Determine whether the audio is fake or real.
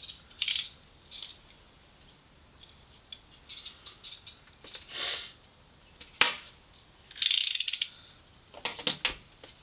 real